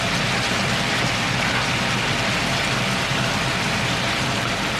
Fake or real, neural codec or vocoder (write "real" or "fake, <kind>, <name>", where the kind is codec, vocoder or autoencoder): real